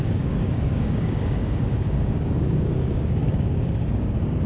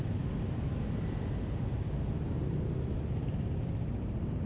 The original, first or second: second